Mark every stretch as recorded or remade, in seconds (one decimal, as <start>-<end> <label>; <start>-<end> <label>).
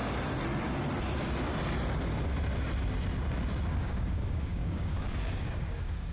0.0-3.7 recorded; 3.7-6.1 remade